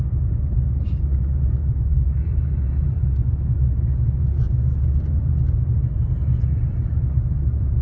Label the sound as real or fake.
fake